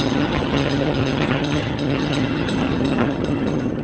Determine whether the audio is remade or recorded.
remade